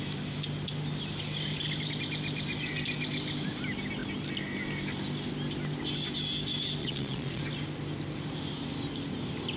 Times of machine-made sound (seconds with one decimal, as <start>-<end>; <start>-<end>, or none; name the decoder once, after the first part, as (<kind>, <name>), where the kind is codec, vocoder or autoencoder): 6.8-7.4 (vocoder, Vocos)